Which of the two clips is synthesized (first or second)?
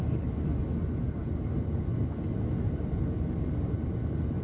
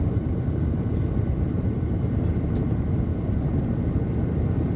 second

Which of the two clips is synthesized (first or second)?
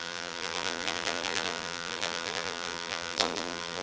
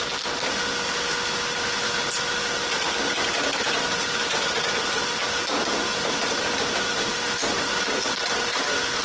first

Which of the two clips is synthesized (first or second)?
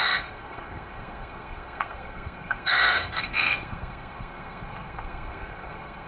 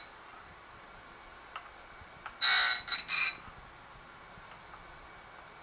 first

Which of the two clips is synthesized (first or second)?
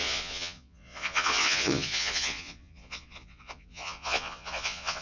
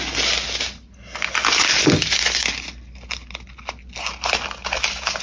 first